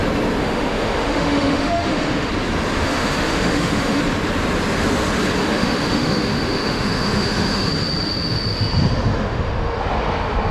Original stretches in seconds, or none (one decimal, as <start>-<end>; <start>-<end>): 0.0-0.4; 2.3-2.8; 4.0-5.4; 7.7-9.1; 9.8-10.5